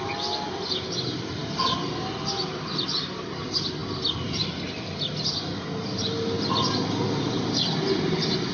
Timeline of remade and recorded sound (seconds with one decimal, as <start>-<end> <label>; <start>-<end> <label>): 0.0-8.5 recorded